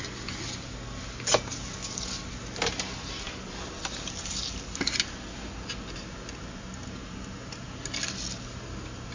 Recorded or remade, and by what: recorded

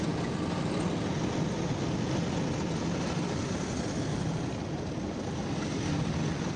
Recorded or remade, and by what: recorded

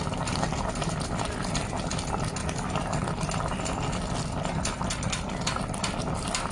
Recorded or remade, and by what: recorded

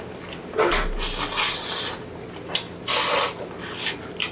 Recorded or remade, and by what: recorded